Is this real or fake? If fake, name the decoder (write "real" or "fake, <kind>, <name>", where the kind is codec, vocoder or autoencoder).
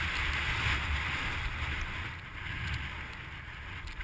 real